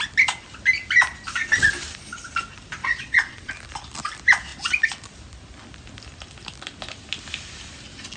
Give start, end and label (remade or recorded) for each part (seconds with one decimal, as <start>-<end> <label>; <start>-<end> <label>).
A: 0.0-2.8 recorded; 2.8-3.5 remade; 3.5-8.2 recorded